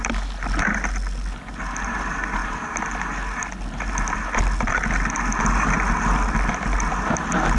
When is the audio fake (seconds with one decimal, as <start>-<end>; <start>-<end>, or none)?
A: none